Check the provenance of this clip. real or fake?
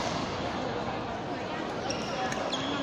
real